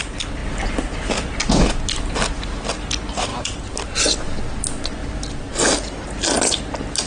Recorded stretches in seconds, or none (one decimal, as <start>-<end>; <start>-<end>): 0.0-7.1